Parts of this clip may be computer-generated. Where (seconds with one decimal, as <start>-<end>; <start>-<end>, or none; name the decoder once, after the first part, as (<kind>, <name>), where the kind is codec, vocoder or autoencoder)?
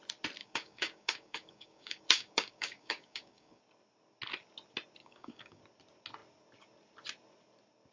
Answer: 0.4-3.6 (codec, DAC); 5.0-5.6